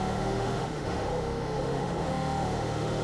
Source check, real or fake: fake